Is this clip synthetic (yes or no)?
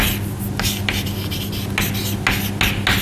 no